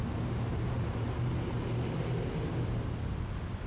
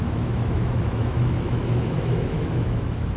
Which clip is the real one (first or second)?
first